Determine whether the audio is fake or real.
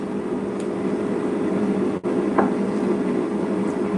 real